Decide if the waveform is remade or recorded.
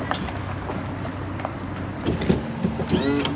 recorded